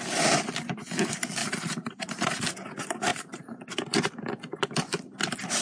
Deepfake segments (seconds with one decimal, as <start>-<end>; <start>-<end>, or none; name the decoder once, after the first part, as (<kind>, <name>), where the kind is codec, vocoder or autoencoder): 1.4-2.3 (vocoder, BigVGAN v2); 3.1-3.7